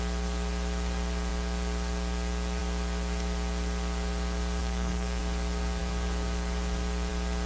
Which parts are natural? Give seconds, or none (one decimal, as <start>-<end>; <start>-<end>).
0.0-4.6; 5.2-7.5